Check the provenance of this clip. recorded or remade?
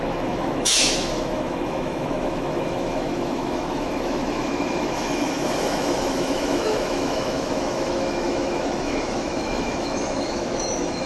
remade